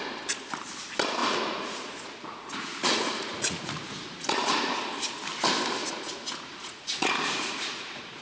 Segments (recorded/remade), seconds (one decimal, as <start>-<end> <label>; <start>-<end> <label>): 0.0-1.2 recorded; 1.2-4.9 remade; 4.9-5.8 recorded; 5.8-8.2 remade